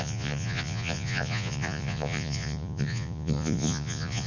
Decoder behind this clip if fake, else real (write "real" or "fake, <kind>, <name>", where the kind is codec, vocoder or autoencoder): fake, vocoder, Vocos